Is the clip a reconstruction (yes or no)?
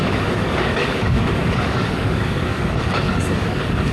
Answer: yes